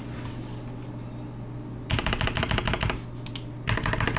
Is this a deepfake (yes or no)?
no